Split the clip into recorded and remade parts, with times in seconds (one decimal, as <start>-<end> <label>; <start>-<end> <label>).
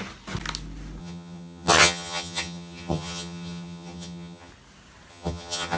0.0-1.0 recorded; 1.0-4.5 remade; 4.5-5.1 recorded; 5.1-5.8 remade